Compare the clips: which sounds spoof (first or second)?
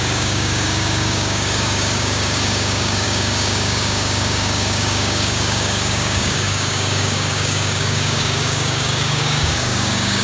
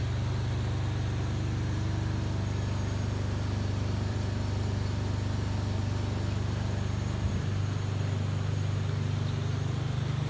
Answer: first